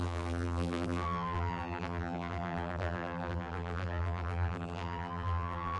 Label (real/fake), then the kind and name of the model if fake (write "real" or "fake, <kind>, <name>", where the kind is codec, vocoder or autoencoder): fake, vocoder, BigVGAN v2